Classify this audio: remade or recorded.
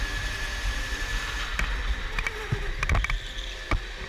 recorded